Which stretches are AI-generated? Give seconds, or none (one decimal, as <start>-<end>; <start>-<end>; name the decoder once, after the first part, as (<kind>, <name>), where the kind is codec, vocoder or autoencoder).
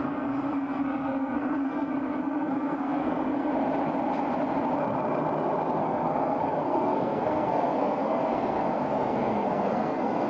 0.0-3.5 (codec, SNAC); 5.8-10.3